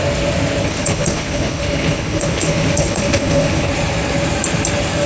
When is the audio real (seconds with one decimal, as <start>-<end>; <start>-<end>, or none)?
0.0-0.6; 3.7-5.1